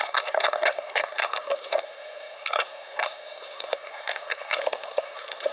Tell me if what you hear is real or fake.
fake